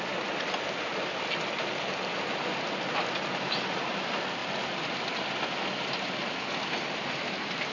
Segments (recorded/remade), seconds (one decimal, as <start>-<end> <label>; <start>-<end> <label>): 0.0-0.9 recorded; 0.9-2.4 remade; 2.4-4.4 recorded; 4.4-5.1 remade; 5.1-7.7 recorded